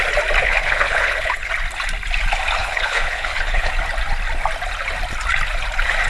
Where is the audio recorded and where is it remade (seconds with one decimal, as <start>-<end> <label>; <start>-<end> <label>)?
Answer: 0.0-0.4 recorded; 0.4-1.5 remade; 1.5-2.6 recorded; 2.6-3.7 remade; 3.7-6.1 recorded

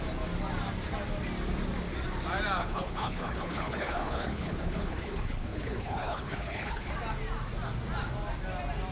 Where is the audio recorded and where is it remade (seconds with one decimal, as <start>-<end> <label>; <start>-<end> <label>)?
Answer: 0.0-2.6 recorded; 2.6-6.9 remade; 6.9-8.9 recorded

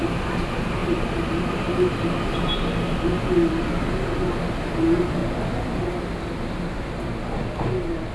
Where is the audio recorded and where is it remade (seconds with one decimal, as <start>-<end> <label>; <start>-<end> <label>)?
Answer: 0.0-8.1 recorded

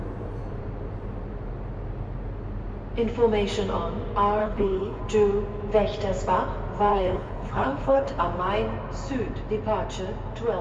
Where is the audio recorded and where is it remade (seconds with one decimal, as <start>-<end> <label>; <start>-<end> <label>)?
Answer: 0.0-4.4 recorded; 4.4-5.0 remade; 5.0-6.9 recorded; 6.9-8.2 remade; 8.2-10.6 recorded

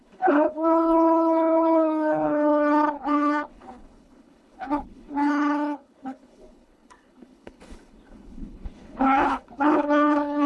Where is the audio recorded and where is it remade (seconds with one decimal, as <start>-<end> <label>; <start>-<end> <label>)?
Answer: 0.0-10.5 remade